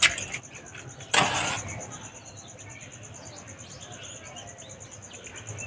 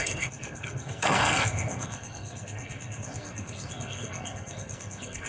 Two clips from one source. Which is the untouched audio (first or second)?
first